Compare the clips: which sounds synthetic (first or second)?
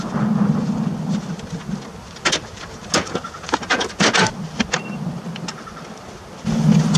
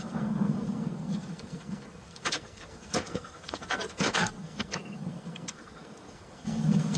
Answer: second